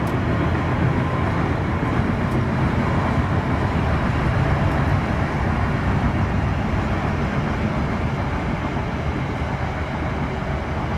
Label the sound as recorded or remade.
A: recorded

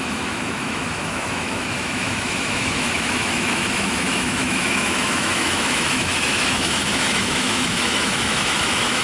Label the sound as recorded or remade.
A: remade